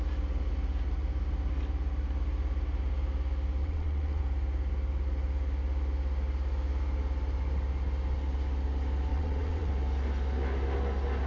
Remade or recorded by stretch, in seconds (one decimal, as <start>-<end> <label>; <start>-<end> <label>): 0.0-3.6 recorded; 3.6-4.2 remade; 4.2-9.1 recorded; 9.1-9.7 remade; 9.7-11.3 recorded